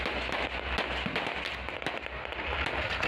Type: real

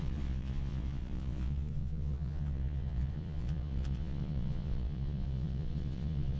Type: fake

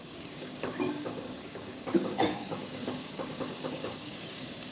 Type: fake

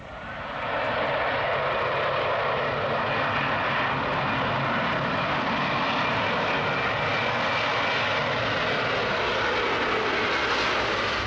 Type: real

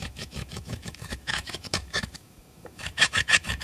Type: fake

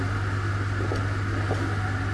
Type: real